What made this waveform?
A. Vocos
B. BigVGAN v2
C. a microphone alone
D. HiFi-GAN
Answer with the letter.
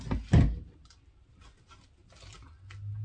C